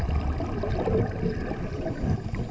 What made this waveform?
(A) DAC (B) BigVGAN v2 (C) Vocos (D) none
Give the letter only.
D